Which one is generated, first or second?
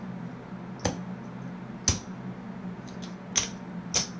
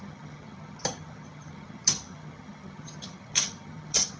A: second